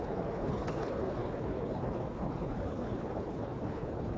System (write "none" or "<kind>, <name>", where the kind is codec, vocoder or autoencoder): codec, HILCodec